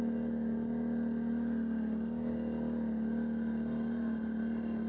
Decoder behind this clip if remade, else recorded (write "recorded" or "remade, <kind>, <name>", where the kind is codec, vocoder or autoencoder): recorded